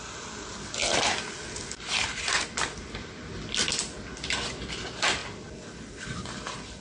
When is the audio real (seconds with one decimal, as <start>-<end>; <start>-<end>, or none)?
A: 0.0-6.8